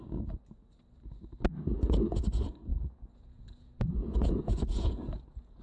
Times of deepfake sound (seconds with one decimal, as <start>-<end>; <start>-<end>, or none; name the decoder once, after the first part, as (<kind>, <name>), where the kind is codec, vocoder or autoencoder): 2.7-5.6 (vocoder, Vocos)